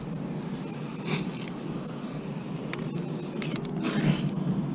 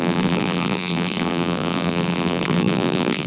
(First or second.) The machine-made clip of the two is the second